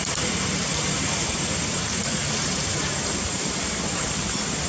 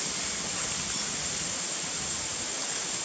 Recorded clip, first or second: second